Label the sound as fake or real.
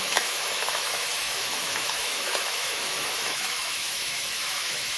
fake